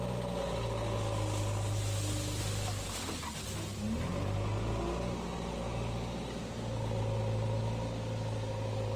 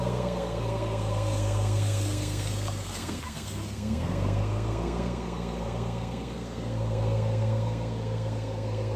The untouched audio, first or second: first